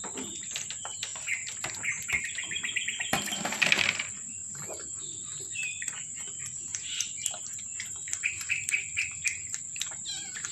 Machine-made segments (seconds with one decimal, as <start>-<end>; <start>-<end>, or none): 0.0-1.1; 2.2-4.4; 5.0-10.5